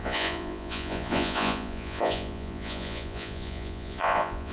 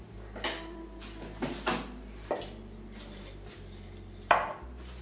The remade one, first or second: first